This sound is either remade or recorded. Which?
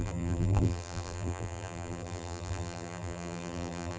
remade